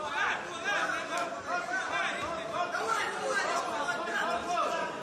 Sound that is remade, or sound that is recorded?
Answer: recorded